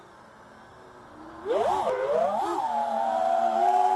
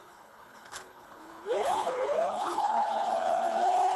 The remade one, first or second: second